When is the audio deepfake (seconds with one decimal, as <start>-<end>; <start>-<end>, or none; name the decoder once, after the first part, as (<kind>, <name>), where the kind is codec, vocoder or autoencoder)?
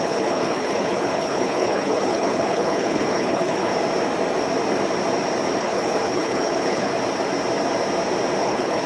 0.0-3.7 (codec, HILCodec); 5.6-6.9; 8.4-8.9